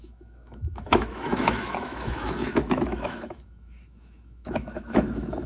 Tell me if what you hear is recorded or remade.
remade